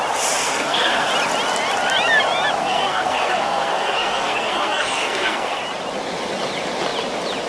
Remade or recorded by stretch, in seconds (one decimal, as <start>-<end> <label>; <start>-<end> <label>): 0.0-0.4 recorded; 0.4-1.1 remade; 1.1-2.6 recorded; 2.6-5.6 remade; 5.6-7.5 recorded